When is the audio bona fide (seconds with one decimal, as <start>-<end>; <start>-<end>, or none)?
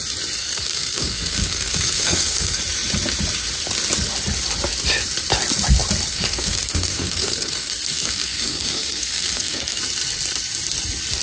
0.0-0.4; 2.6-6.1; 9.8-11.2